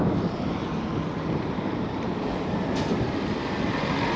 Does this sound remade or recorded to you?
recorded